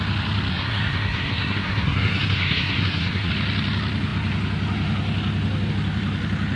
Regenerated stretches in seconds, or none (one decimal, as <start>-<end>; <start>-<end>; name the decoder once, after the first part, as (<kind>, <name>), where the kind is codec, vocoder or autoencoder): 0.5-3.3 (codec, SNAC)